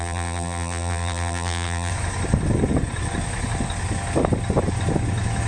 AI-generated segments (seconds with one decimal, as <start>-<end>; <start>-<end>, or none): 0.0-1.9